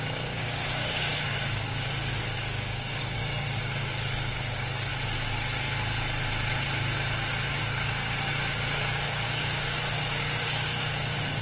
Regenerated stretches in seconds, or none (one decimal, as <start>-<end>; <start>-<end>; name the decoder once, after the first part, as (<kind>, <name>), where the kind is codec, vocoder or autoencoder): 0.0-4.9 (codec, DAC); 7.6-11.4